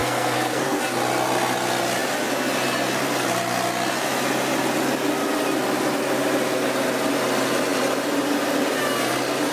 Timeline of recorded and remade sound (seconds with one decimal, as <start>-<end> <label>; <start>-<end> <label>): 0.0-0.8 remade; 0.8-9.5 recorded